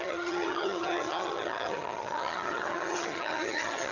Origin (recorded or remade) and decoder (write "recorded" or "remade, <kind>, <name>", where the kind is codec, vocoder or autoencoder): remade, vocoder, HiFi-GAN